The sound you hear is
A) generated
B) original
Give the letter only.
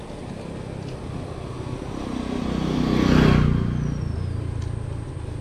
B